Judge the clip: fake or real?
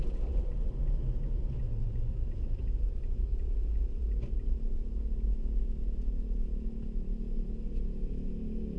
real